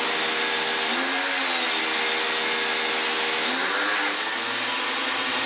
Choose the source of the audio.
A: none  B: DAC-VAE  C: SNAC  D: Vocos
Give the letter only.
A